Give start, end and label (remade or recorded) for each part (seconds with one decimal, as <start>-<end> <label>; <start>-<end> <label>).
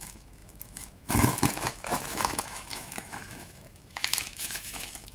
0.0-5.1 remade